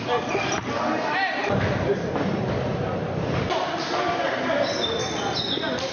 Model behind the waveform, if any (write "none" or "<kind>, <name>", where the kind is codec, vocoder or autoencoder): none